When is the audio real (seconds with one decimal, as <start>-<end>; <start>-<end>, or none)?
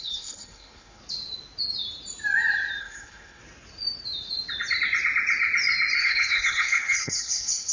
1.0-2.8; 3.4-6.0